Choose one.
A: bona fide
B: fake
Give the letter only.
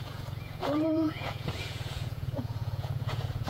B